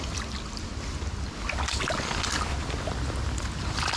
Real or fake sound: real